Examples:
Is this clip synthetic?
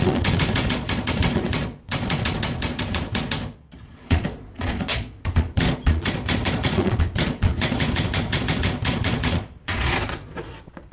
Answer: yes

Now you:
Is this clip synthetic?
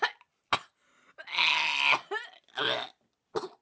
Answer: no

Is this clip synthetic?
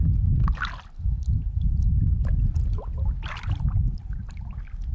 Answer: yes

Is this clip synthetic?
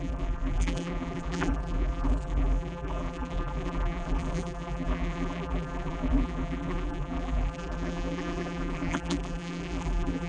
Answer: yes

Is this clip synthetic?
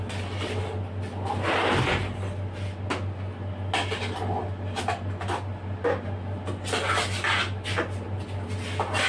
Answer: no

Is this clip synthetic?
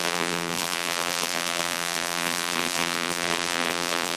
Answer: yes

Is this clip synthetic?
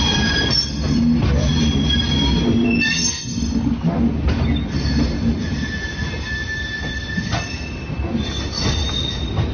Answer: no